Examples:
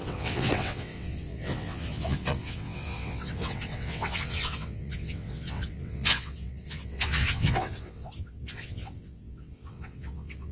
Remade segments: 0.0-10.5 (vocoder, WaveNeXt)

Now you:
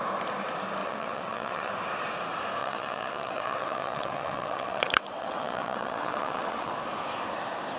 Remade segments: 0.8-1.7 (vocoder, WaveNeXt); 2.6-6.7